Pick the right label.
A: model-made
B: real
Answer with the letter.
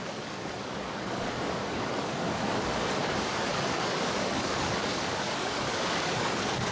A